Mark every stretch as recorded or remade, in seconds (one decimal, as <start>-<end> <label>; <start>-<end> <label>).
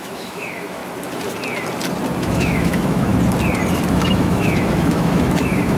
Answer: 0.0-0.8 remade; 0.8-2.2 recorded; 2.2-3.1 remade; 3.1-3.9 recorded; 3.9-5.8 remade